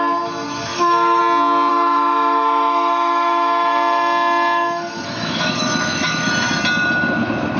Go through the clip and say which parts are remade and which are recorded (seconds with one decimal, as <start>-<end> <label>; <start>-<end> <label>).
0.0-0.7 recorded; 0.7-1.2 remade; 1.2-1.7 recorded; 1.7-6.3 remade; 6.3-7.6 recorded